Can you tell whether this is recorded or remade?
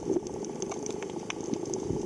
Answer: recorded